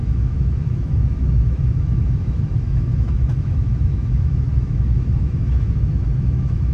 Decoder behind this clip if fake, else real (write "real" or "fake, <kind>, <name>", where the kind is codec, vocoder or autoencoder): fake, autoencoder, DAC-VAE